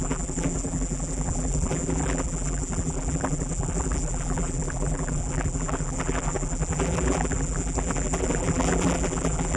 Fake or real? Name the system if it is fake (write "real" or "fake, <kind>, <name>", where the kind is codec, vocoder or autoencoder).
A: fake, vocoder, BigVGAN v2